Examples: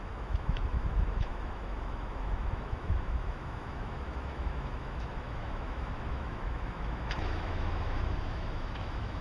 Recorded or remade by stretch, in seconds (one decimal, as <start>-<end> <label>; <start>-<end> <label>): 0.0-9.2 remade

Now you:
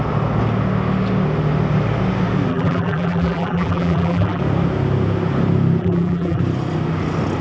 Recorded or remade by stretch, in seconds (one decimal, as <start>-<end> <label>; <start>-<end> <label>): 0.0-2.5 recorded; 2.5-4.4 remade; 4.4-5.8 recorded; 5.8-6.4 remade; 6.4-7.4 recorded

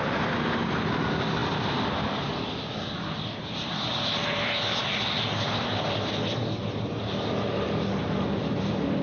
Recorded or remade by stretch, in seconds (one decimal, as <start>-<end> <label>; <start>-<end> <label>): 0.0-9.0 recorded

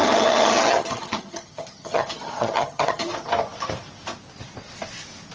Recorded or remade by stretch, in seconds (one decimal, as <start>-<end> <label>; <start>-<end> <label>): 0.0-3.1 remade; 3.1-5.3 recorded

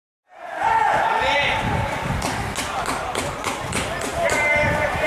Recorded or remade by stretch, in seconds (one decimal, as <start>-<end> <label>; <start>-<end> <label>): 0.0-4.1 recorded; 4.1-5.1 remade

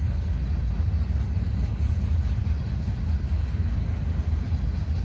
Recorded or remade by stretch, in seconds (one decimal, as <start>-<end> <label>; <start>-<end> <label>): 0.0-0.4 remade; 0.4-3.4 recorded; 3.4-3.8 remade; 3.8-5.0 recorded

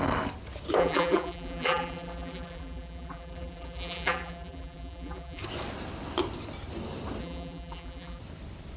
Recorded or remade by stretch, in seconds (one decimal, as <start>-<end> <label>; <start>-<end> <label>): 0.0-0.8 recorded; 0.8-5.4 remade; 5.4-7.2 recorded; 7.2-8.2 remade; 8.2-8.8 recorded

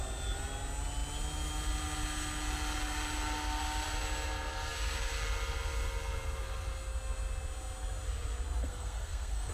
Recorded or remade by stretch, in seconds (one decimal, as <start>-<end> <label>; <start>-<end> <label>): 0.0-8.6 recorded; 8.6-9.5 remade